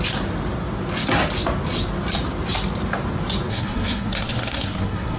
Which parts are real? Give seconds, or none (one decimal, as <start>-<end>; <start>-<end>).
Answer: 0.0-3.5